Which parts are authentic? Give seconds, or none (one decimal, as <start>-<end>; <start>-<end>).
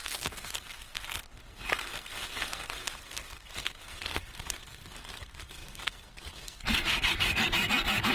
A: none